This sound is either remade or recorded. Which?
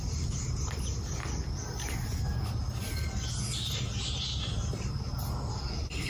recorded